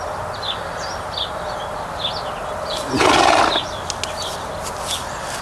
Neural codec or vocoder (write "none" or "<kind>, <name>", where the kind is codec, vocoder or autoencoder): none